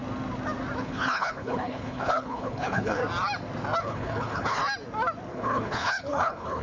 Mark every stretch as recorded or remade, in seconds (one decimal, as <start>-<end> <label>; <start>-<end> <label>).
0.0-0.8 recorded; 0.8-3.0 remade; 3.0-3.8 recorded; 3.8-4.6 remade; 4.6-5.3 recorded; 5.3-6.6 remade